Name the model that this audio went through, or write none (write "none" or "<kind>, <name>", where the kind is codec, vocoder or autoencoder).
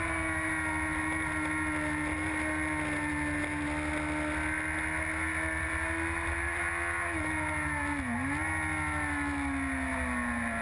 none